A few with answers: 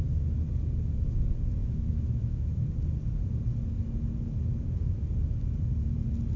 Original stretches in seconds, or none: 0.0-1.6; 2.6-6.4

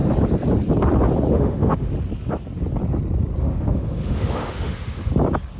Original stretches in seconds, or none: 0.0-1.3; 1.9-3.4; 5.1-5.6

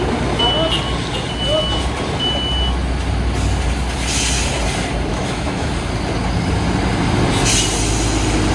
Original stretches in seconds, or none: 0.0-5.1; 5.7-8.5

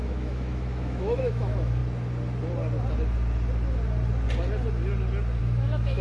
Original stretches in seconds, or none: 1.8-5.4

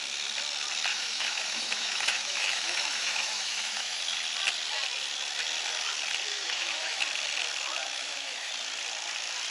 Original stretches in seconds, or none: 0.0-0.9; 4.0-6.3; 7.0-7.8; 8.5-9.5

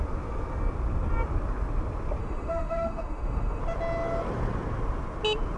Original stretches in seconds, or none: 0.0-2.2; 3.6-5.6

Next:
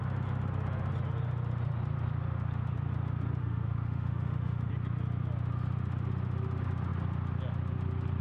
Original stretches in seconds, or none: 0.0-3.4; 4.7-8.2

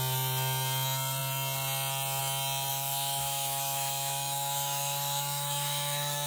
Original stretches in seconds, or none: 0.0-2.7